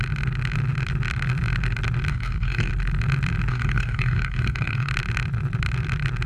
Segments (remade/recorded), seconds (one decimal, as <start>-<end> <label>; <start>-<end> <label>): 0.0-2.1 recorded; 2.1-2.7 remade; 2.7-3.5 recorded; 3.5-4.9 remade; 4.9-6.3 recorded